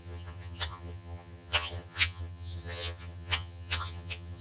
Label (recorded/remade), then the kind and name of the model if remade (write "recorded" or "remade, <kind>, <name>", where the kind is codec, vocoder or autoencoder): remade, vocoder, HiFi-GAN